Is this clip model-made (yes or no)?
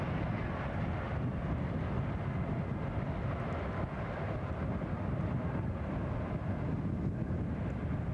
no